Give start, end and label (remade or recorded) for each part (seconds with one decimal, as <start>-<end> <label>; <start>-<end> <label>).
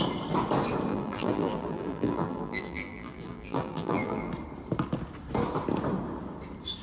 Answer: 0.0-0.9 recorded; 0.9-4.3 remade; 4.3-6.8 recorded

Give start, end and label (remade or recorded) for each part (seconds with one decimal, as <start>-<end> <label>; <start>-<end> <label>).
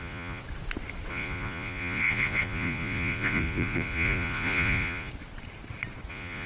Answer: 0.0-0.4 remade; 0.4-1.1 recorded; 1.1-5.1 remade; 5.1-6.1 recorded; 6.1-6.5 remade